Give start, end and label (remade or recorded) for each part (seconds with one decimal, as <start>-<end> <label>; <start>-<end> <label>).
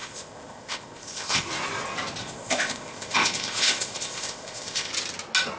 0.0-1.5 remade; 1.5-2.2 recorded; 2.2-4.9 remade; 4.9-5.6 recorded